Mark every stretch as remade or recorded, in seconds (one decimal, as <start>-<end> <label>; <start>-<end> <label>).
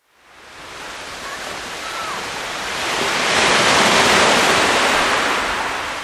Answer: 0.0-2.0 recorded; 2.0-3.9 remade; 3.9-6.0 recorded